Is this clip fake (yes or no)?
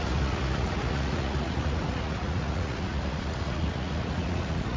yes